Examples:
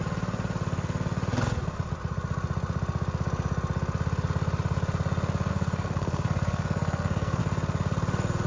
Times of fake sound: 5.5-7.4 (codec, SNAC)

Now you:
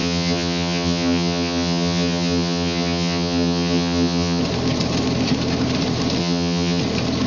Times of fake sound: 0.0-4.4 (vocoder, HiFi-GAN); 6.2-6.8